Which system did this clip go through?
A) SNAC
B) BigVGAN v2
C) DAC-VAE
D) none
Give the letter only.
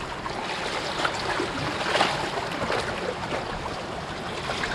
D